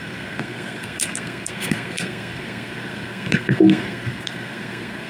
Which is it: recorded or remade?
remade